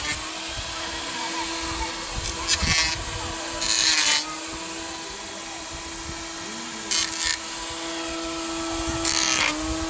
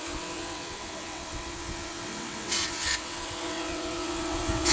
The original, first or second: first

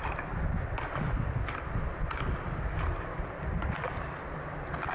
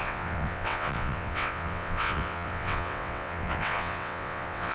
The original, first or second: first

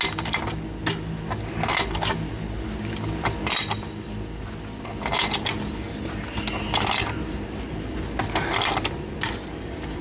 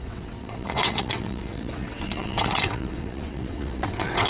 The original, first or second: first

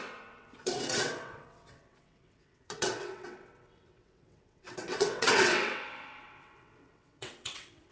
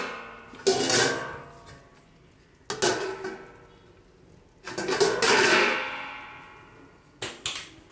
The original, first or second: second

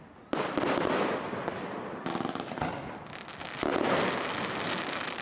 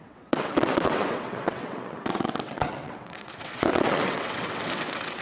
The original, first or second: first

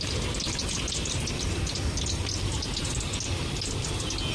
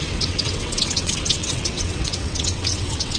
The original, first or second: first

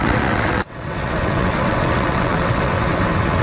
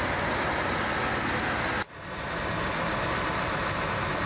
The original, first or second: second